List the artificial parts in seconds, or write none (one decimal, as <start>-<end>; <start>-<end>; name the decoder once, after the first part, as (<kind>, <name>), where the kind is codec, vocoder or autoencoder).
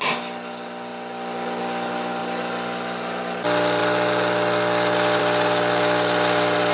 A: none